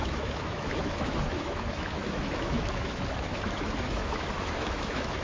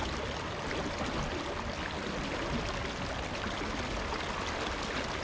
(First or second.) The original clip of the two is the second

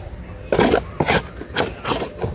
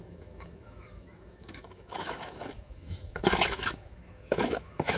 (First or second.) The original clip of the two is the first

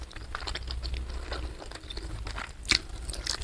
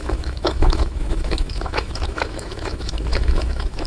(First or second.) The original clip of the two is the first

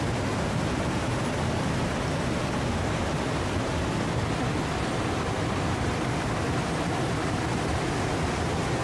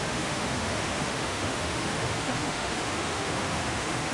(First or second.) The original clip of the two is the first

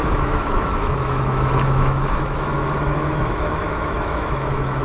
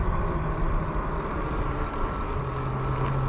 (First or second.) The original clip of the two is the second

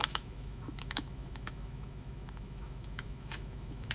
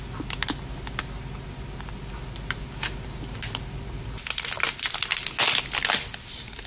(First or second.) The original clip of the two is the second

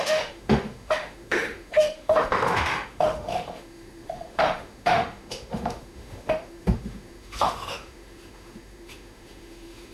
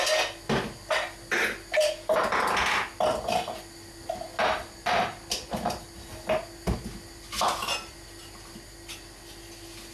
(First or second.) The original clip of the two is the second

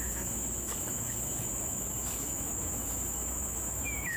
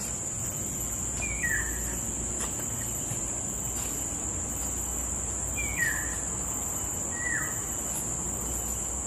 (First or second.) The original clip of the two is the second